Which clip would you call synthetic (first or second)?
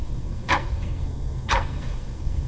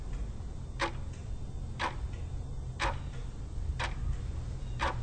first